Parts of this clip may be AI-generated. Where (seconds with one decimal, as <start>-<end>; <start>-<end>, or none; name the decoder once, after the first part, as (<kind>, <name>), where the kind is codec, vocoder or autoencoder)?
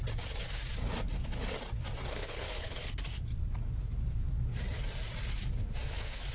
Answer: 2.1-3.0 (codec, HILCodec)